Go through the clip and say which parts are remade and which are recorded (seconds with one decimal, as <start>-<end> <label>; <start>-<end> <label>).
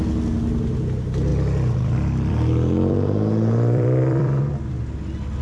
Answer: 0.0-1.3 recorded; 1.3-4.4 remade; 4.4-5.4 recorded